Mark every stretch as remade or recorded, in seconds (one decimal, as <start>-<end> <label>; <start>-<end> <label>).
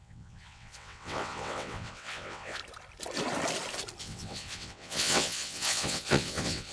0.0-2.6 remade; 2.6-4.0 recorded; 4.0-6.7 remade